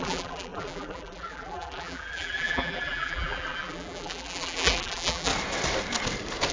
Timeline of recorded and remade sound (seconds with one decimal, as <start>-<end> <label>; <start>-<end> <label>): 0.0-5.3 remade; 5.3-6.5 recorded